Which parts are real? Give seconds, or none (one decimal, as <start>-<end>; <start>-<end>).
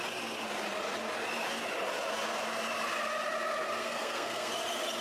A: 0.0-3.8; 4.5-5.0